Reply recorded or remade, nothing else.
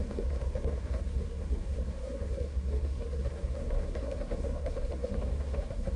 remade